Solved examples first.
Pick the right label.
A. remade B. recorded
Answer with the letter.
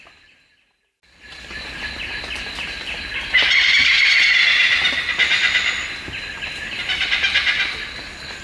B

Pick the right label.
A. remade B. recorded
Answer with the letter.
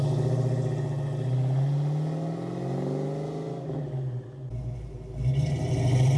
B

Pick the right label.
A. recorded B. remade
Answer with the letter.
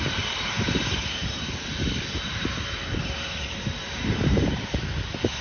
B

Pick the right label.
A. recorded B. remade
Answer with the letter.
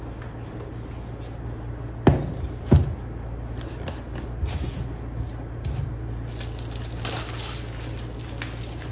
A